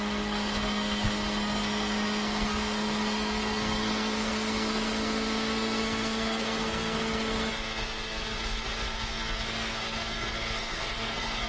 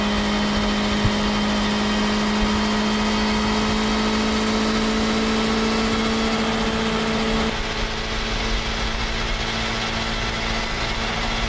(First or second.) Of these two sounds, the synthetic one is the first